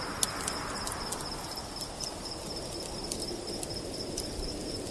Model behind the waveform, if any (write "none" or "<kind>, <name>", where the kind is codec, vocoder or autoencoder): none